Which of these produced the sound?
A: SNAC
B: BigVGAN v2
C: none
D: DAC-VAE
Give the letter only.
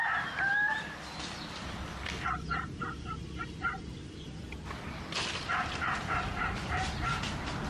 C